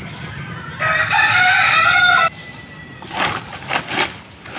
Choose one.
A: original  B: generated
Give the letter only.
B